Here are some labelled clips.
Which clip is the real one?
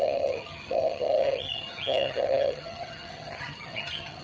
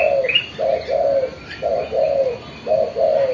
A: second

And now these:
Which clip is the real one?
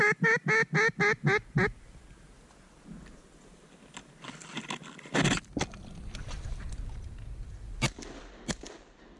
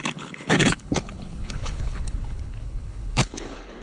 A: first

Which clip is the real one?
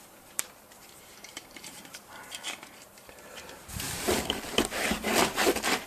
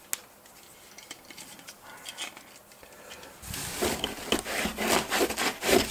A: second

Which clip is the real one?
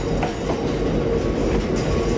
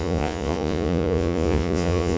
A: first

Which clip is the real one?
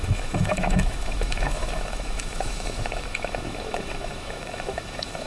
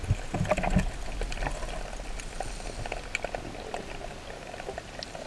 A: second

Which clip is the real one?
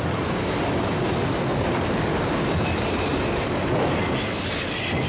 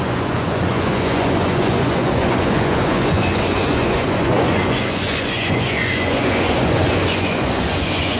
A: first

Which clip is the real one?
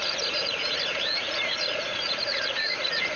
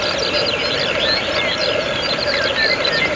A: second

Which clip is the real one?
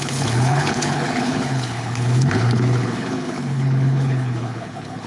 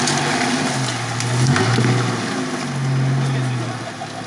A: second